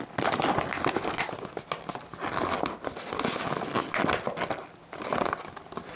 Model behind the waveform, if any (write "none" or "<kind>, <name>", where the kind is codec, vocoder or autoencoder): none